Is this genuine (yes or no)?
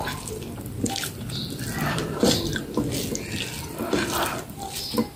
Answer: yes